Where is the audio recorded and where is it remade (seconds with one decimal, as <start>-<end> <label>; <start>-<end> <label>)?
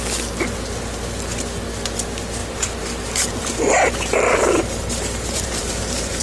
0.0-2.4 recorded; 2.4-6.2 remade